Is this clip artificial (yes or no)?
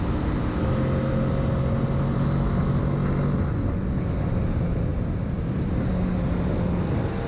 no